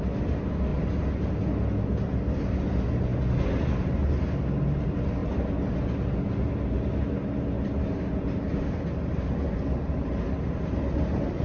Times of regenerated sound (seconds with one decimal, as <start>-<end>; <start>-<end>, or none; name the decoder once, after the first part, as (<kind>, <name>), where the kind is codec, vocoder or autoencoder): none